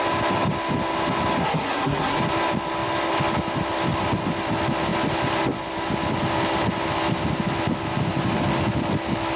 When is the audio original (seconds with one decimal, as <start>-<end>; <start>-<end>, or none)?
0.0-1.4; 2.2-9.4